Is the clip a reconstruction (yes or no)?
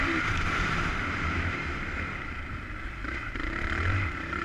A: yes